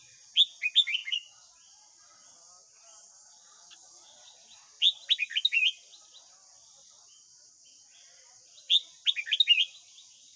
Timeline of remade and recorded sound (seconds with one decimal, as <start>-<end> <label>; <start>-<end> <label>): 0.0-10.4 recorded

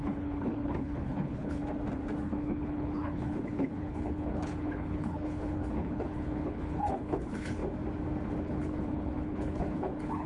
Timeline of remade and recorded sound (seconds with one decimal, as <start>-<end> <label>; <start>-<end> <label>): 0.0-1.6 remade; 1.6-2.2 recorded; 2.2-7.6 remade; 7.6-8.4 recorded; 8.4-10.3 remade

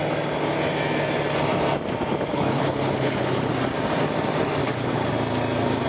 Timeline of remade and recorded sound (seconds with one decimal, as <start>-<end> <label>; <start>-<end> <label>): 0.0-2.3 recorded; 2.3-3.5 remade; 3.5-4.6 recorded; 4.6-5.1 remade; 5.1-5.9 recorded

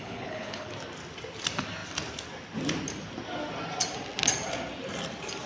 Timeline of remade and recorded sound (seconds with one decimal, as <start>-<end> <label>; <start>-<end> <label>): 0.0-0.7 remade; 0.7-5.5 recorded

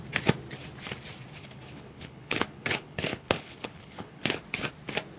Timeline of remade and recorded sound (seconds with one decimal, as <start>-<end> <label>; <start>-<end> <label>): 0.0-1.3 recorded; 1.3-4.4 remade; 4.4-5.2 recorded

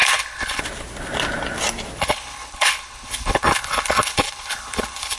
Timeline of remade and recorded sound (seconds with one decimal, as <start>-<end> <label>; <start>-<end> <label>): 0.0-0.6 remade; 0.6-2.0 recorded; 2.0-5.2 remade

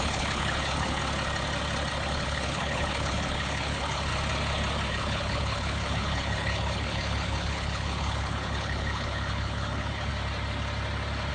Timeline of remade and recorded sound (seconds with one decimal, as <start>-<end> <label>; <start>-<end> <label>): 0.0-1.0 remade; 1.0-1.9 recorded; 1.9-4.1 remade; 4.1-4.9 recorded; 4.9-10.1 remade; 10.1-11.3 recorded

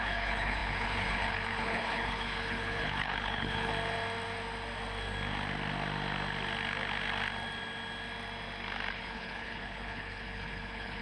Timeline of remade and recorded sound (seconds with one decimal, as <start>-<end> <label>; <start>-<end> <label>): 0.0-3.7 remade; 3.7-8.9 recorded; 8.9-11.0 remade